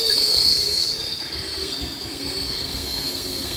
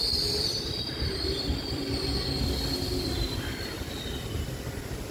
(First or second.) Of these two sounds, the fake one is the first